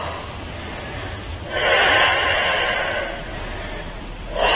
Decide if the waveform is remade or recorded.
recorded